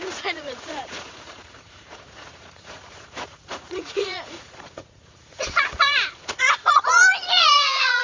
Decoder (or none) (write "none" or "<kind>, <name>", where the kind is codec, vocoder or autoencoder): vocoder, Vocos